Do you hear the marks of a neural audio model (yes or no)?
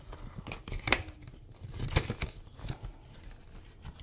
no